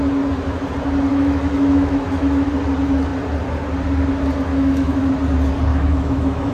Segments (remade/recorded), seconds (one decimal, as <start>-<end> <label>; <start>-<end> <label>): 0.0-1.1 recorded; 1.1-2.5 remade; 2.5-4.5 recorded; 4.5-5.1 remade; 5.1-5.7 recorded; 5.7-6.5 remade